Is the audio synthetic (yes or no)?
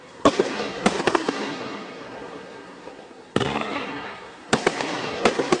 yes